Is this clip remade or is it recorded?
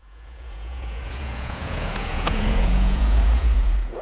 remade